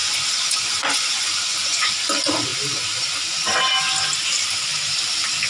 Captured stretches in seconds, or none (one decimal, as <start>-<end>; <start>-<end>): 1.9-5.5